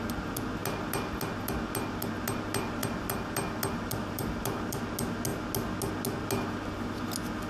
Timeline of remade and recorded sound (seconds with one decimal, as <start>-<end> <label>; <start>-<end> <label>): 0.0-2.8 recorded; 2.8-4.8 remade; 4.8-7.5 recorded